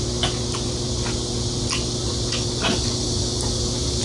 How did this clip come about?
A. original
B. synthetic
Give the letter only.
A